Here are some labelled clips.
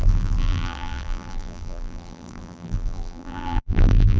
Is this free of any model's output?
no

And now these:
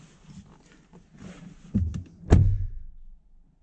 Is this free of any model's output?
yes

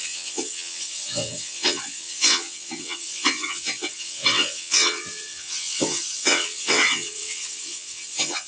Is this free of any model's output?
no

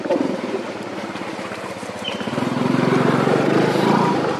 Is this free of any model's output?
no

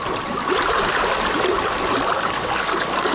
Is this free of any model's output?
yes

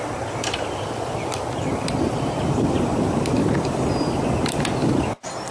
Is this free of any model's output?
yes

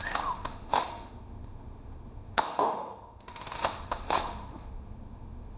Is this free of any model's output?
no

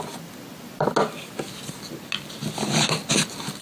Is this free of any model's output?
yes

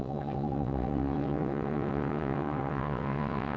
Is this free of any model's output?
no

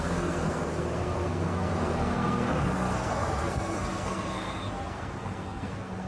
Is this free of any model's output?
no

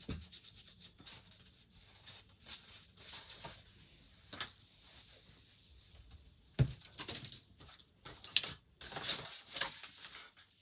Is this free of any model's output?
yes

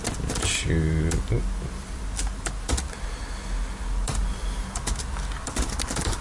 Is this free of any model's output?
yes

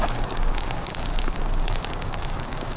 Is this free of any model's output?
no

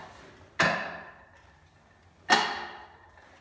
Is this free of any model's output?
yes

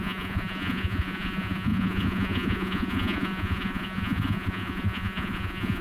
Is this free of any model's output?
no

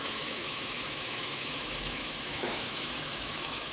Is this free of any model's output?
no